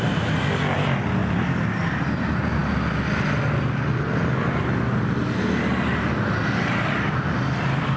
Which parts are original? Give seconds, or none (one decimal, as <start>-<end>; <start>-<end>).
0.0-8.0